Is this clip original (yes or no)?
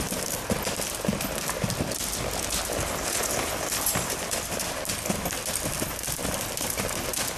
yes